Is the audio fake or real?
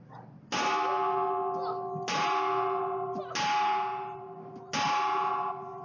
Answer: real